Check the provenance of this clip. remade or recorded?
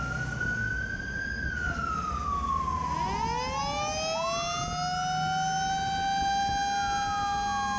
recorded